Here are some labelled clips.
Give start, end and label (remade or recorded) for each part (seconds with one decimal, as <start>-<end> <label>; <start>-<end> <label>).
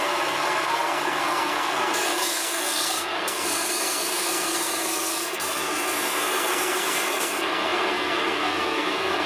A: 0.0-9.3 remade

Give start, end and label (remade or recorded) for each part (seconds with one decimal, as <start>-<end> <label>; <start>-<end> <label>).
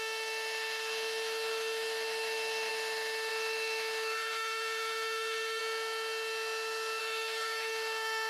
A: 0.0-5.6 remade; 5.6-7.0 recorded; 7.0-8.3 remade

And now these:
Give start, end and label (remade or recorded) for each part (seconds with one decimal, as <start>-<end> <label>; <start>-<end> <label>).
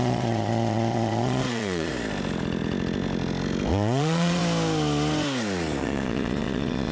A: 0.0-1.9 remade; 1.9-3.7 recorded; 3.7-4.4 remade; 4.4-5.8 recorded; 5.8-6.9 remade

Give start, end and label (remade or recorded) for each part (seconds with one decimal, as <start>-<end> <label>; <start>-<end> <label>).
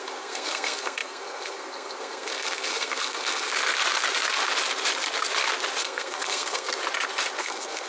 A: 0.0-3.5 remade; 3.5-5.8 recorded; 5.8-6.8 remade; 6.8-7.4 recorded; 7.4-7.9 remade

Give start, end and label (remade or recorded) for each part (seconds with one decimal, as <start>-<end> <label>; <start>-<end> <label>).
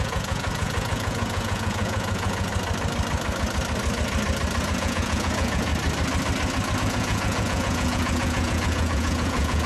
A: 0.0-2.5 remade; 2.5-4.6 recorded; 4.6-5.7 remade; 5.7-6.8 recorded; 6.8-9.7 remade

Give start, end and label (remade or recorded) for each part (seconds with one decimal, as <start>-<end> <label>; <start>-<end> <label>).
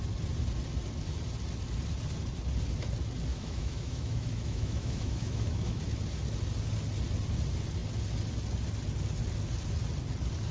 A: 0.0-3.3 recorded; 3.3-5.8 remade; 5.8-10.5 recorded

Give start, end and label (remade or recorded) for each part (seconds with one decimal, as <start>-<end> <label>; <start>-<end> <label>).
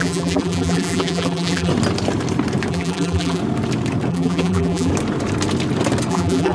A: 0.0-1.7 remade; 1.7-2.7 recorded; 2.7-3.4 remade; 3.4-4.1 recorded; 4.1-4.9 remade; 4.9-6.1 recorded; 6.1-6.5 remade